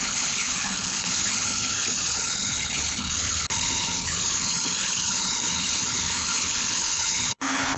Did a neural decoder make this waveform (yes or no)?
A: yes